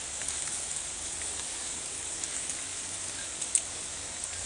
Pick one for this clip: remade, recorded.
remade